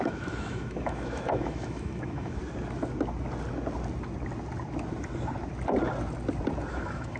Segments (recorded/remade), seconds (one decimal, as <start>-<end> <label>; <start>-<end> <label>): 0.0-2.4 remade; 2.4-6.7 recorded; 6.7-7.2 remade